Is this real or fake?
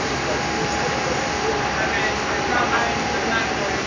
real